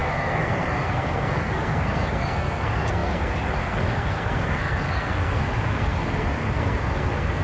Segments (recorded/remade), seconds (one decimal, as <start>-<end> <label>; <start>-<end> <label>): 0.0-7.4 remade